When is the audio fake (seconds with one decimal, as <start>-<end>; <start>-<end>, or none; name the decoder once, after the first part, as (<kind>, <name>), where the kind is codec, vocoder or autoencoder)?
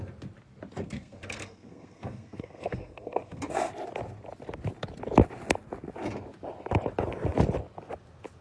0.8-3.7 (codec, SNAC)